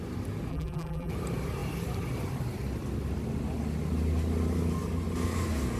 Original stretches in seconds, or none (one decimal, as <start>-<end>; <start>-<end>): 0.0-0.5; 1.1-5.8

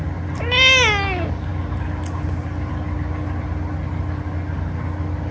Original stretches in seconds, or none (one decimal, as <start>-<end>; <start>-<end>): 0.0-5.3

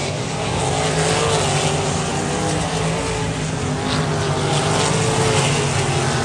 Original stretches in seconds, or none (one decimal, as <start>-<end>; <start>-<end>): 0.6-6.2

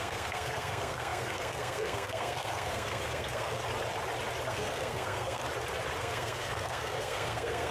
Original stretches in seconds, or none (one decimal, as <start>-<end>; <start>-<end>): 3.6-4.5; 5.4-6.0

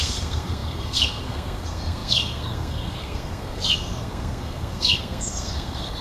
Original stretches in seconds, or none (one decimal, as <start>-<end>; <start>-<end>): none

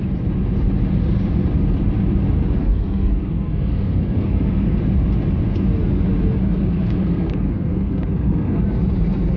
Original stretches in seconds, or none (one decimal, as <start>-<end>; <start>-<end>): 0.0-2.6; 4.8-6.4; 8.6-9.4